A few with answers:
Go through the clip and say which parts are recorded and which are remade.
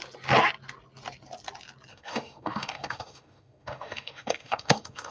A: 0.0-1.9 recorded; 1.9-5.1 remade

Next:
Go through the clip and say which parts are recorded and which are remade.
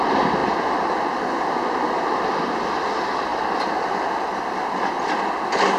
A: 0.0-5.8 recorded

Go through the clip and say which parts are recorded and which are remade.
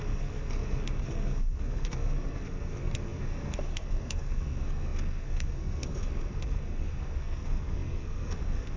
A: 0.0-8.8 remade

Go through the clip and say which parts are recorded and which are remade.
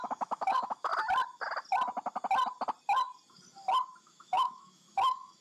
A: 0.0-0.9 remade; 0.9-4.0 recorded; 4.0-5.4 remade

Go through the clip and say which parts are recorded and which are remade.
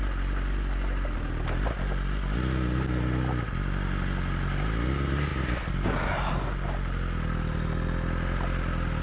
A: 0.0-9.0 recorded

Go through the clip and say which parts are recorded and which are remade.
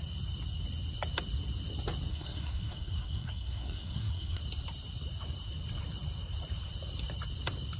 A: 0.0-2.1 recorded; 2.1-4.4 remade; 4.4-7.8 recorded